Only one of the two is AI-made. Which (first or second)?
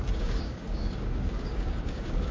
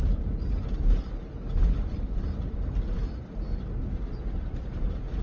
first